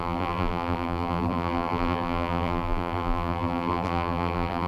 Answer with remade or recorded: remade